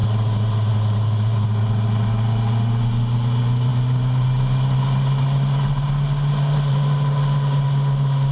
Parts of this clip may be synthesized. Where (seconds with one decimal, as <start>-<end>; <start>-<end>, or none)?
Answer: none